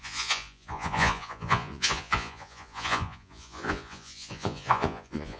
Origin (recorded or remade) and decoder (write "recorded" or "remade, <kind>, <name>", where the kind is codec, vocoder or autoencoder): remade, vocoder, Vocos